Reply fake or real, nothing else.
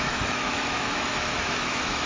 fake